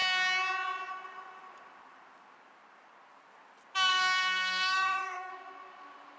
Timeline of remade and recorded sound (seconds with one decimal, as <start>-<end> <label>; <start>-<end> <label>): 0.0-3.9 recorded; 3.9-5.3 remade; 5.3-6.2 recorded